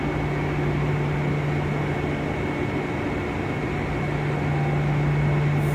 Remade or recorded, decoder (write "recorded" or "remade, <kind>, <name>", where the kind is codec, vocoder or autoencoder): recorded